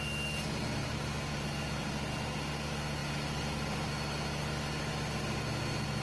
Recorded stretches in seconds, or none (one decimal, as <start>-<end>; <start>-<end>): 0.0-0.8; 2.1-3.0; 3.9-6.0